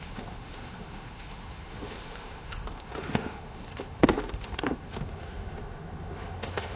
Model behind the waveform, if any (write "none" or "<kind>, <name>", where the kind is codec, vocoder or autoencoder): autoencoder, DAC-VAE